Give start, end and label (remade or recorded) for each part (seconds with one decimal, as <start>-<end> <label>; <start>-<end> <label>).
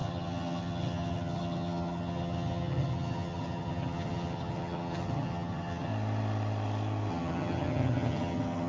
0.0-5.9 remade; 5.9-7.1 recorded; 7.1-8.7 remade